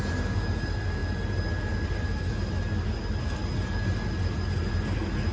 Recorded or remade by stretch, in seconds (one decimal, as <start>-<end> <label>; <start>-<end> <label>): 0.0-5.3 recorded

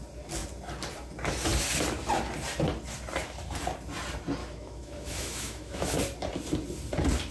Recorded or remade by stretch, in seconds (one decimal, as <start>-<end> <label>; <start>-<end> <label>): 0.0-4.4 recorded; 4.4-6.0 remade; 6.0-7.3 recorded